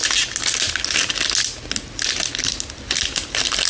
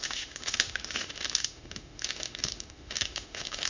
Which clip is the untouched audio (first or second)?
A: first